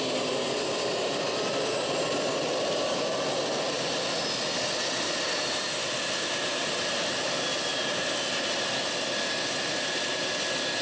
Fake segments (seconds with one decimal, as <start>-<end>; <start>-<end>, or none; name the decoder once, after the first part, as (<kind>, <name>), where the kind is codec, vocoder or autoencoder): none